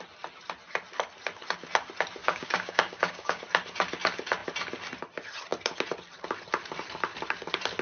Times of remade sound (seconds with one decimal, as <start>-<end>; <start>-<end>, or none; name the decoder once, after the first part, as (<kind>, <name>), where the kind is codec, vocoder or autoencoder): 2.2-3.4 (codec, DAC)